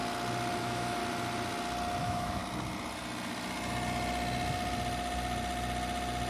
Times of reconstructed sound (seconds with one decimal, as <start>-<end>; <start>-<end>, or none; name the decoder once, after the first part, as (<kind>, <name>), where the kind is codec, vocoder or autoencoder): 0.6-1.0 (autoencoder, DAC-VAE); 2.0-2.4